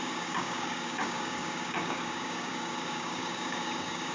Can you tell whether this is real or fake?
fake